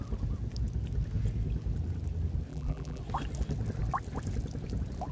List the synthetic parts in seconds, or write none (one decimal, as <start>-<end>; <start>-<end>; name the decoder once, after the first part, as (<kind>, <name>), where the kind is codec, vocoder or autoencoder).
2.5-3.0 (vocoder, BigVGAN v2)

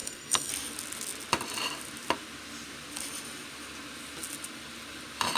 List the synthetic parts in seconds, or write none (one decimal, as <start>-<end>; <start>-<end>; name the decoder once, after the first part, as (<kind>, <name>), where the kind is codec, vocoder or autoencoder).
0.0-0.5 (codec, SNAC)

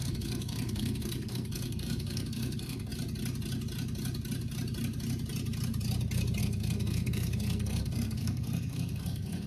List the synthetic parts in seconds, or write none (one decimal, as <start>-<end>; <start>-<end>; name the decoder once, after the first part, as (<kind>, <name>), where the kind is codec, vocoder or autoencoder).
0.0-2.9 (codec, SNAC); 6.4-9.5

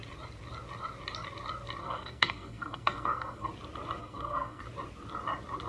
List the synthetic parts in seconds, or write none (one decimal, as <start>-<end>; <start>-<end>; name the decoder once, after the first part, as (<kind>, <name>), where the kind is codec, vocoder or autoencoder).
1.8-3.5 (codec, SNAC); 4.0-4.6

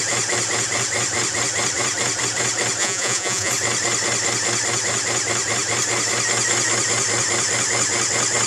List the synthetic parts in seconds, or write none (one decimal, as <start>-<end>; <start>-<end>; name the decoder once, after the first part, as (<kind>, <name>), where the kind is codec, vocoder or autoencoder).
2.8-3.5 (vocoder, Vocos)